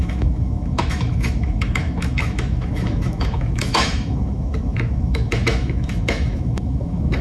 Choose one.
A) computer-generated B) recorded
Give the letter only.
A